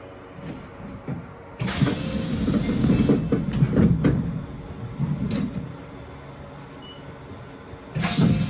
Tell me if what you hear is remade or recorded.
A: recorded